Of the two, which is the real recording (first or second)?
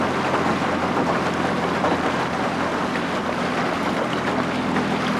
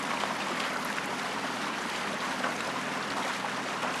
first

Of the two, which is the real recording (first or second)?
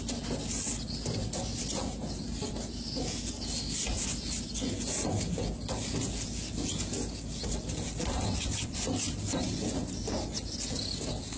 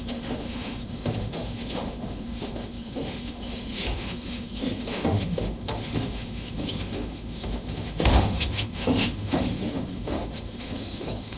first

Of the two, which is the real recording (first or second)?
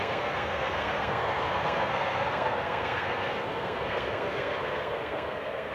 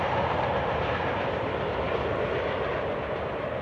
second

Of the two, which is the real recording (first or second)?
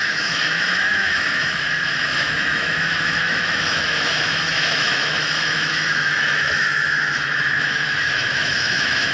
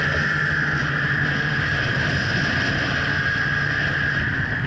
second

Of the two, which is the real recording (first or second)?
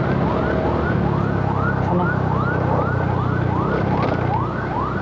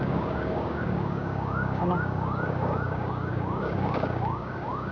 first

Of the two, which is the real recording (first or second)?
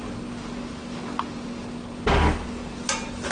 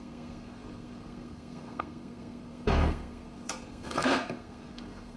first